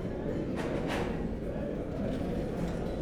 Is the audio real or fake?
real